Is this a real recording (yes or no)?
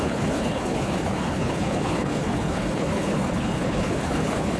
no